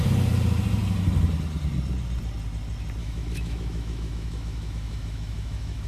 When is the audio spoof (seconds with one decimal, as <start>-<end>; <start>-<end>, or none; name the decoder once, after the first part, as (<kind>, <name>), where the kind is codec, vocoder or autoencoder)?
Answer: 3.0-5.9 (autoencoder, DAC-VAE)